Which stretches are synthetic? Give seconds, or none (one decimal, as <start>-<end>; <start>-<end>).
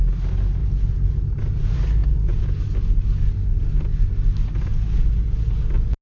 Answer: 2.0-2.6